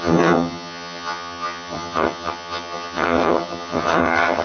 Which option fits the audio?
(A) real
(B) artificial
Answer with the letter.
B